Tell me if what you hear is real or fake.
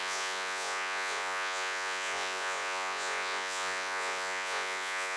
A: fake